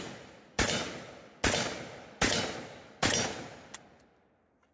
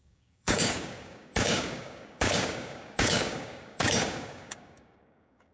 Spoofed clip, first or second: second